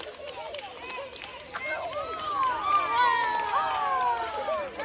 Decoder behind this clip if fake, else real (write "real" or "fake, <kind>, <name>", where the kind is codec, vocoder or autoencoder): real